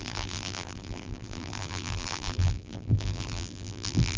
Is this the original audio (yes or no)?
no